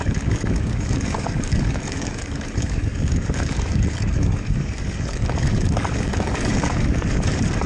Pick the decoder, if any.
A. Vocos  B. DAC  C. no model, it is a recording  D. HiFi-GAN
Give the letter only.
B